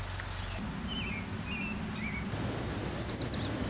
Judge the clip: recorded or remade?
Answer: recorded